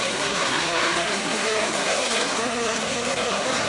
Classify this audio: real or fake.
fake